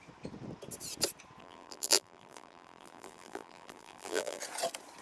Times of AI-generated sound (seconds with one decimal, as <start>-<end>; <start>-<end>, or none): 1.4-4.4